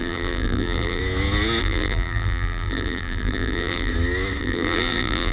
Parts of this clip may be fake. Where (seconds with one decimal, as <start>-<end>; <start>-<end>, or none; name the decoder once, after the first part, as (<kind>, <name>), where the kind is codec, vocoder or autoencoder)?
0.0-1.0 (vocoder, BigVGAN v2); 1.6-3.9; 4.4-5.3